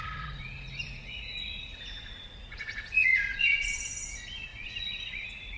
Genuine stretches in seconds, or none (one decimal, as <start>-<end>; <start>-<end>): none